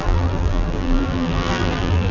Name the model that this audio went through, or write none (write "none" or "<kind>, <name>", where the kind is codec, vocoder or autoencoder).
vocoder, BigVGAN v2